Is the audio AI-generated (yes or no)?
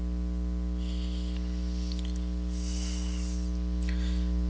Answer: no